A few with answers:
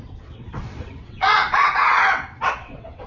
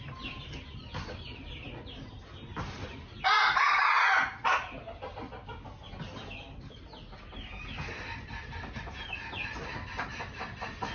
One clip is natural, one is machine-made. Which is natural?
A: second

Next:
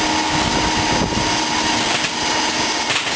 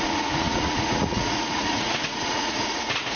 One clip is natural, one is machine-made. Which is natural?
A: first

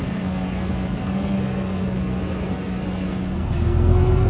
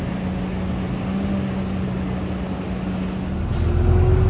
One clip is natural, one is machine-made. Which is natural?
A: second